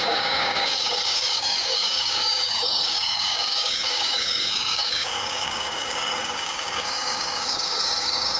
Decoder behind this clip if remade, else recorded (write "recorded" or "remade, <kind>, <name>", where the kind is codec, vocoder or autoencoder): remade, codec, DAC